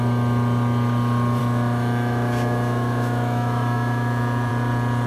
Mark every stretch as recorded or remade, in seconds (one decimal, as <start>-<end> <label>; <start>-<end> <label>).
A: 0.0-1.4 recorded; 1.4-4.5 remade; 4.5-5.1 recorded